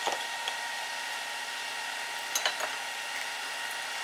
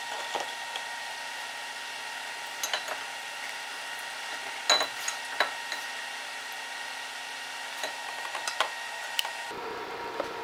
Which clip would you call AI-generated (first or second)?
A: first